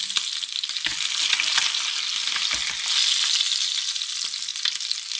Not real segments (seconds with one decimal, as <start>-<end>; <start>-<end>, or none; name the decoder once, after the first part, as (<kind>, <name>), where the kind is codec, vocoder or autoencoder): none